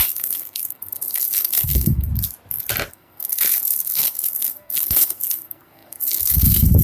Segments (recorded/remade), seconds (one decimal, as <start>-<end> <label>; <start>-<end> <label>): 0.0-2.1 remade; 2.1-2.9 recorded; 2.9-6.8 remade